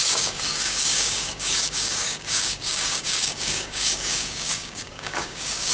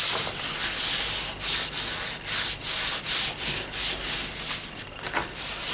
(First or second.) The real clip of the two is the second